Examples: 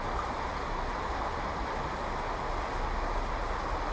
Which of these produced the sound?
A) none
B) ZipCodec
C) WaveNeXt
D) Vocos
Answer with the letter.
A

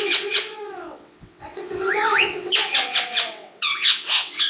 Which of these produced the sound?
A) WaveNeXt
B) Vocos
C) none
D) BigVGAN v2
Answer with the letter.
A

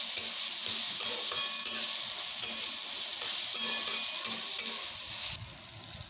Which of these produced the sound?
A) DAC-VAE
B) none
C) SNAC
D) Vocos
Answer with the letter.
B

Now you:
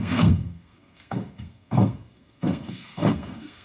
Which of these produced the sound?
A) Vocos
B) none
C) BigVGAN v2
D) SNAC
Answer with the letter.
D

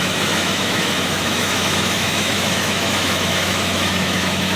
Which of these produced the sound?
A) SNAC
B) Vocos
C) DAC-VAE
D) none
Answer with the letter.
C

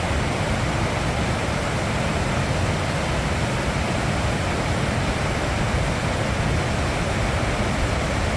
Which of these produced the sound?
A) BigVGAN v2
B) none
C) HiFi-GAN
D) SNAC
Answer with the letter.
B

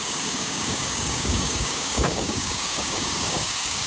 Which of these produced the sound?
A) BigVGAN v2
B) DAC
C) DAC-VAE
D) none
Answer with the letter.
B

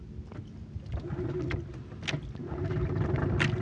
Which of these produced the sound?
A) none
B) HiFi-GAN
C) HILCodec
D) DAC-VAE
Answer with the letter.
A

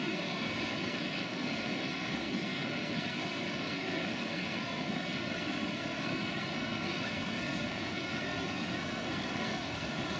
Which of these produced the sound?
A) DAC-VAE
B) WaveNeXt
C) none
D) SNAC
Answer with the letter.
D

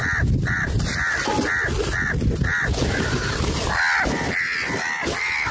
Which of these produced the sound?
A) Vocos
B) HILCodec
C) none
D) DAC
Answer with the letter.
C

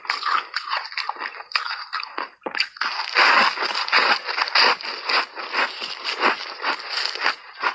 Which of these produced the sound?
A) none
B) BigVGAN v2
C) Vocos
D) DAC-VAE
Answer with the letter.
A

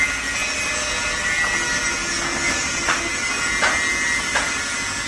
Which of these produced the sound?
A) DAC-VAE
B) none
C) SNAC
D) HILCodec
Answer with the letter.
B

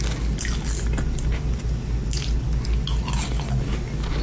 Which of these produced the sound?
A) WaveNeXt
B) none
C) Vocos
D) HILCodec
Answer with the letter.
B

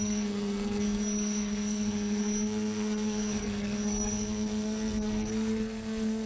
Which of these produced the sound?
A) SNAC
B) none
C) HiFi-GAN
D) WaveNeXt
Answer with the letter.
A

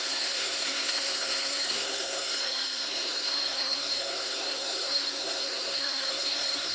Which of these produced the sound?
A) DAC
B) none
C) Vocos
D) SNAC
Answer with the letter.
D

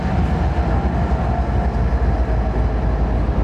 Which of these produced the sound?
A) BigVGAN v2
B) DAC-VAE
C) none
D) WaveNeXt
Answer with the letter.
C